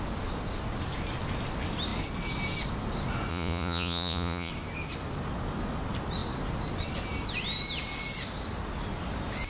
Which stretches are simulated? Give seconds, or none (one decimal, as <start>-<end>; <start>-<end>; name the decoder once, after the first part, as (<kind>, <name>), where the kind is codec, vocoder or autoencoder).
3.3-4.5 (vocoder, Vocos)